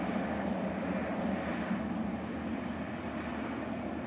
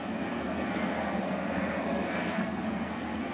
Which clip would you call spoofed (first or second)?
second